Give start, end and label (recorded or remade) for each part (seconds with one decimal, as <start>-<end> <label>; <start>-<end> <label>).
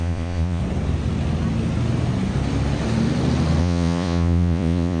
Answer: 0.0-0.6 remade; 0.6-3.6 recorded; 3.6-5.0 remade